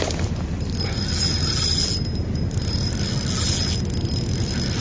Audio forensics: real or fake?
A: real